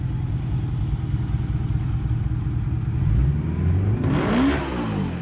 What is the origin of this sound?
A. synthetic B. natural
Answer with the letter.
B